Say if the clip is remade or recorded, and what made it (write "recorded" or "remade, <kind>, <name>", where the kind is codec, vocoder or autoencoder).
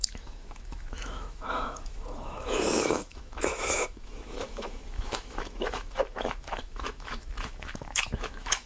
remade, autoencoder, DAC-VAE